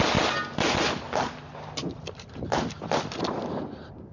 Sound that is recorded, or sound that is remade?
recorded